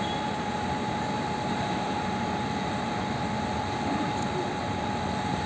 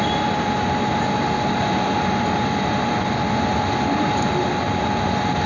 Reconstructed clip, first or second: first